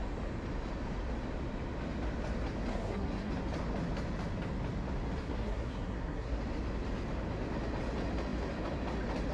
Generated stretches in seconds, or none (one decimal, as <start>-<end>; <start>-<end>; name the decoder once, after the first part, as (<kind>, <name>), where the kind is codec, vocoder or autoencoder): 2.7-3.3 (codec, SNAC); 5.2-6.4